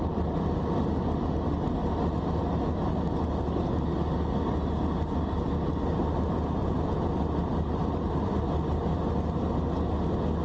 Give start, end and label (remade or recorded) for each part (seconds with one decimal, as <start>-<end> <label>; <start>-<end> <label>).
0.0-6.6 recorded; 6.6-9.1 remade; 9.1-10.4 recorded

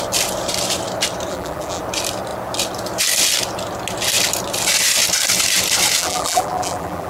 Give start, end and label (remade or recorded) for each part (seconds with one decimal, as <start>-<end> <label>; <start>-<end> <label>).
0.0-1.3 recorded; 1.3-1.8 remade; 1.8-6.0 recorded; 6.0-7.1 remade

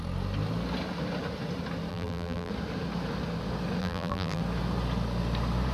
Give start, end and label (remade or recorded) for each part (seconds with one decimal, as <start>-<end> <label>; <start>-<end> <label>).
0.0-1.9 recorded; 1.9-2.5 remade; 2.5-3.8 recorded; 3.8-4.4 remade; 4.4-5.7 recorded